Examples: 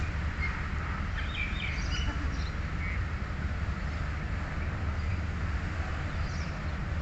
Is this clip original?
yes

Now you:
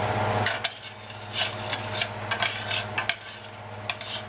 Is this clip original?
yes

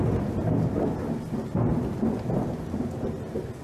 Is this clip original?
yes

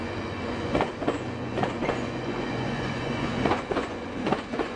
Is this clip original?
no